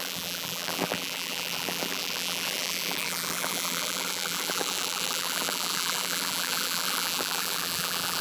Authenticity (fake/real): fake